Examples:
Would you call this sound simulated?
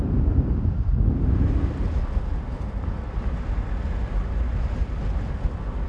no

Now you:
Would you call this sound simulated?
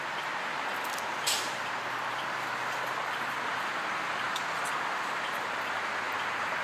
no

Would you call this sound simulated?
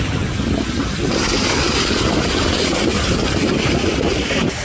no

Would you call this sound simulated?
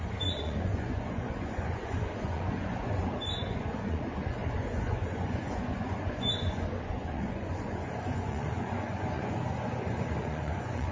yes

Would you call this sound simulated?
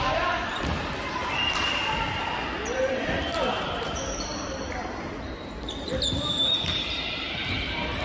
yes